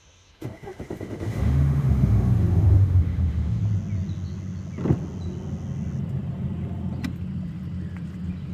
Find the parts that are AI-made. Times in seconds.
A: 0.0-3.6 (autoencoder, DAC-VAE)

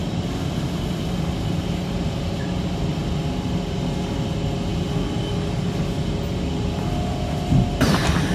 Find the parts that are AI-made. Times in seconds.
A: none

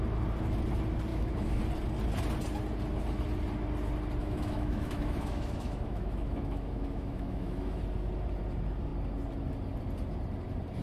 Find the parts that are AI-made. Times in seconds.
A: 1.1-1.6 (autoencoder, DAC-VAE); 4.2-7.8

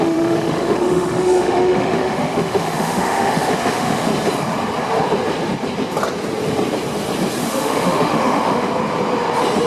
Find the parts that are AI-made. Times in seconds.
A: 0.0-4.1 (autoencoder, DAC-VAE); 7.4-8.7